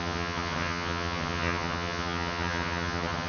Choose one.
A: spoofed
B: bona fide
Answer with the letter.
A